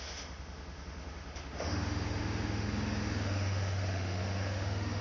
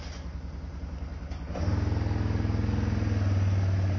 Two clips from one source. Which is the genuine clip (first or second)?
second